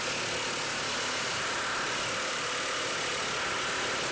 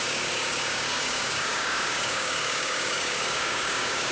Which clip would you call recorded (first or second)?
first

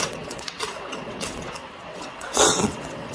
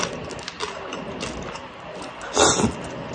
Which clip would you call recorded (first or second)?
second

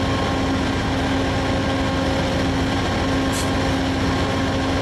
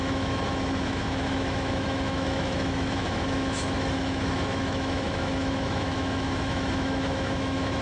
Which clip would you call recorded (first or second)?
first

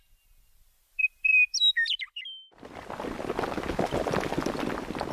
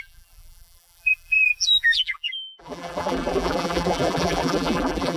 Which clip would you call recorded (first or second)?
first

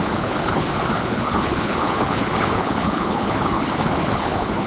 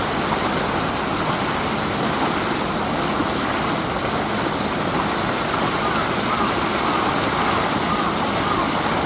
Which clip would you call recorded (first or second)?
second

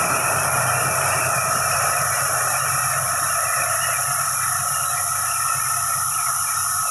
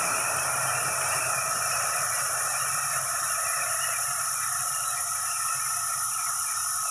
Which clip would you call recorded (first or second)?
first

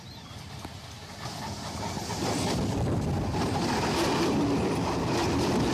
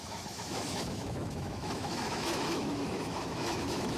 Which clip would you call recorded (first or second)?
first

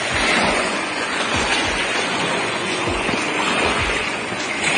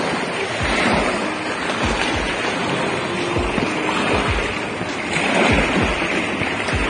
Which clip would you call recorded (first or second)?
second